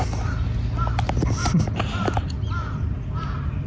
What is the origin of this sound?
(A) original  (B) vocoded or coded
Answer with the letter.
A